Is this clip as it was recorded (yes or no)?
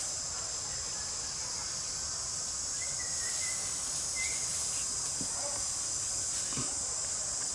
yes